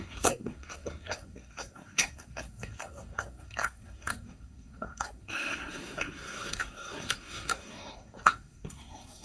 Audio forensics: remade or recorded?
remade